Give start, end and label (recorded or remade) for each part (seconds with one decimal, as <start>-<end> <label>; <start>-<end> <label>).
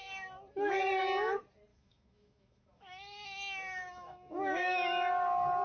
0.0-1.7 recorded; 1.7-5.1 remade; 5.1-5.6 recorded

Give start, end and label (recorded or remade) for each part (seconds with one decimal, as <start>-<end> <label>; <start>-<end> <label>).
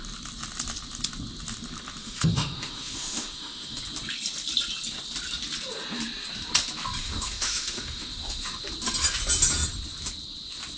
0.0-2.0 recorded; 2.0-3.8 remade; 3.8-7.0 recorded; 7.0-8.6 remade; 8.6-10.8 recorded